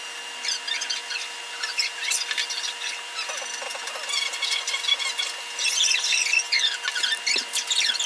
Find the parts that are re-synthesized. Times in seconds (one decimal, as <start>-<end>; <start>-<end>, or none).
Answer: none